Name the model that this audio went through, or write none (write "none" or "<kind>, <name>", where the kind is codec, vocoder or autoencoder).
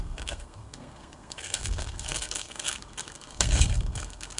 codec, SNAC